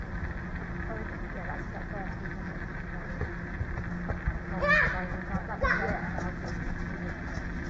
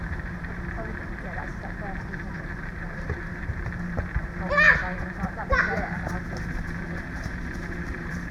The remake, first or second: second